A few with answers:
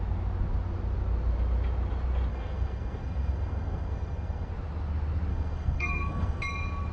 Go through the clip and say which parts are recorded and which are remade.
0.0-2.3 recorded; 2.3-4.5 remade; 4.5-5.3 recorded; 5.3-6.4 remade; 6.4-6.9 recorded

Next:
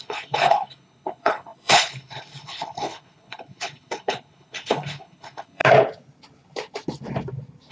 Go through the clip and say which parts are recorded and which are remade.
0.0-5.6 remade; 5.6-7.7 recorded

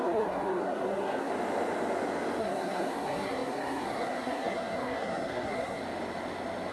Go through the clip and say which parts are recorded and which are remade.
0.0-1.3 remade; 1.3-2.4 recorded; 2.4-5.8 remade; 5.8-6.7 recorded

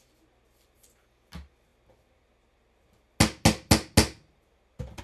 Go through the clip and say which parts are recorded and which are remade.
0.0-5.0 recorded

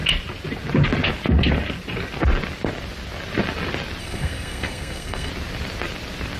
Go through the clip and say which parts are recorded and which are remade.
0.0-4.0 recorded; 4.0-5.3 remade; 5.3-6.4 recorded